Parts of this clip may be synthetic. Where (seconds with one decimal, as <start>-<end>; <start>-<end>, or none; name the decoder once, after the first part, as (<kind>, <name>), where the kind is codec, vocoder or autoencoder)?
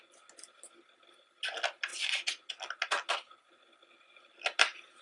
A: none